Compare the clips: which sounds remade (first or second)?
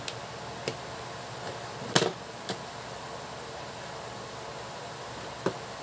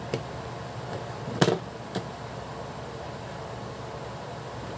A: second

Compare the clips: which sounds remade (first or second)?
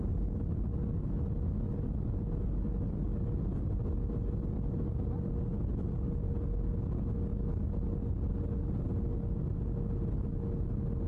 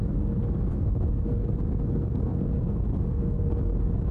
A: second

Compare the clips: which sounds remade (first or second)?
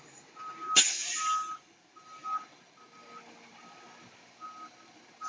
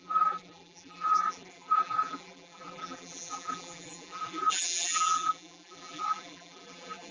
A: second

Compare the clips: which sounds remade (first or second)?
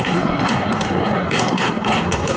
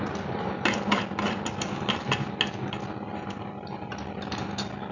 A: first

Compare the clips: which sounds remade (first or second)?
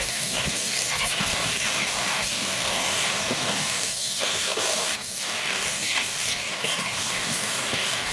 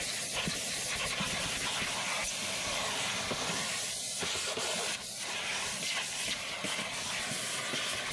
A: first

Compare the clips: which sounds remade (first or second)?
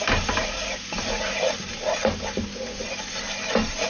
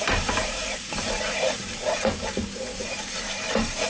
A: second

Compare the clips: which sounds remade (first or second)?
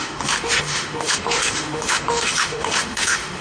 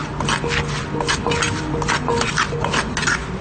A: first